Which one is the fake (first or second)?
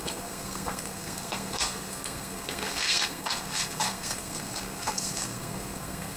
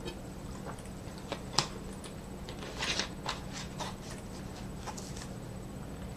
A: first